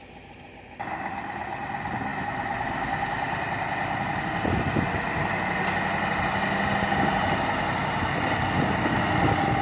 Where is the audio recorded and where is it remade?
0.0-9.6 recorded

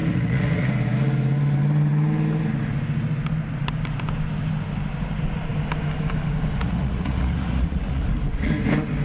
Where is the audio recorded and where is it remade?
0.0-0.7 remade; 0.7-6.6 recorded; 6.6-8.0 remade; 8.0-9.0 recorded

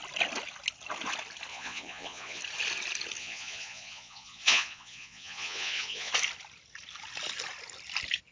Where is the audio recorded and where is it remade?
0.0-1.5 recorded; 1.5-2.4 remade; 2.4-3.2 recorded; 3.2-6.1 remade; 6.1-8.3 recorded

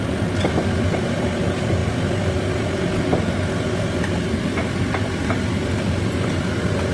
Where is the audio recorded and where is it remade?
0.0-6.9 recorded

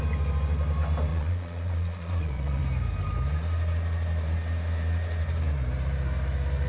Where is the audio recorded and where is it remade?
0.0-1.1 recorded; 1.1-2.6 remade; 2.6-6.7 recorded